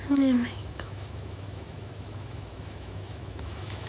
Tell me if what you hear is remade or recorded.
remade